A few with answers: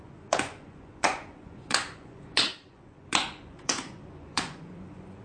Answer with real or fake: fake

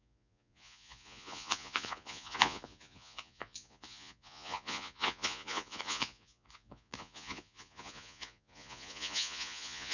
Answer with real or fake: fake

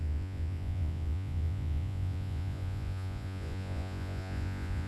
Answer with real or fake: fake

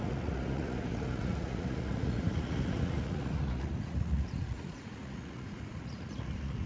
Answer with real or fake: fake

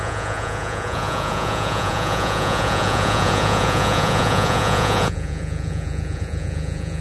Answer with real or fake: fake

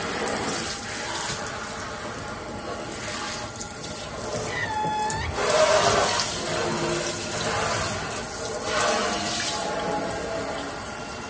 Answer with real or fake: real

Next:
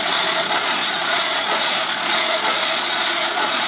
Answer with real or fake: fake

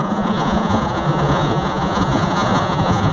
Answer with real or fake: fake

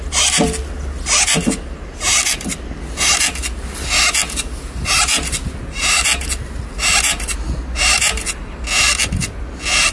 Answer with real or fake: real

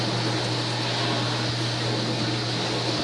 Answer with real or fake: real